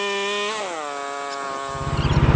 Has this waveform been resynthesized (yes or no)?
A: no